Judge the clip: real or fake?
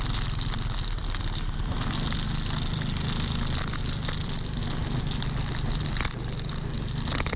real